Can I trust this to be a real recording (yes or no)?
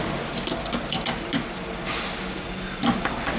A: yes